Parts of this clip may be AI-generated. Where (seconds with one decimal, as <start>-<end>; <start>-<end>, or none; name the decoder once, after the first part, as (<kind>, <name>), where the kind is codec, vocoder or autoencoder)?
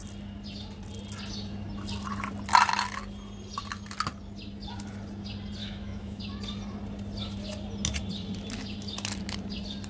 5.6-6.2 (autoencoder, DAC-VAE)